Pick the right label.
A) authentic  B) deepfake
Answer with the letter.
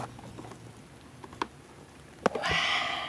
A